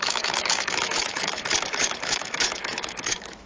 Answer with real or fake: fake